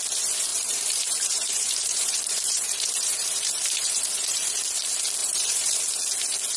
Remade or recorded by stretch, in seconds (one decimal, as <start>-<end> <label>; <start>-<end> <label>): 0.0-0.5 recorded; 0.5-4.5 remade; 4.5-5.2 recorded; 5.2-5.8 remade; 5.8-6.6 recorded